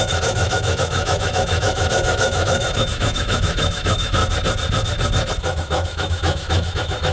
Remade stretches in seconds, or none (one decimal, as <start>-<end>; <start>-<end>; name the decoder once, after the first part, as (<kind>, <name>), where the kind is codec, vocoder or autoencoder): 0.0-4.2 (autoencoder, DAC-VAE); 5.4-7.1